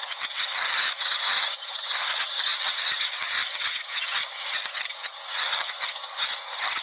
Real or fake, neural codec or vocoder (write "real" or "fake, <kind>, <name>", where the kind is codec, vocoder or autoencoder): fake, vocoder, HiFi-GAN